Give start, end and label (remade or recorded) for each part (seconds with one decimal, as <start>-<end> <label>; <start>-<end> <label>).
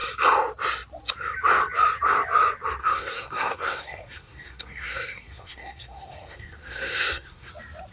0.0-2.8 recorded; 2.8-7.5 remade; 7.5-7.9 recorded